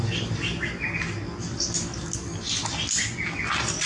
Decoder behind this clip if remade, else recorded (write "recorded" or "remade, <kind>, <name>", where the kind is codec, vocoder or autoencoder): recorded